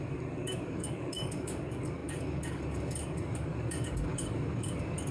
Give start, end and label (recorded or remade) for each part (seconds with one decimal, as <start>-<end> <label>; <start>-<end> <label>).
0.0-5.1 remade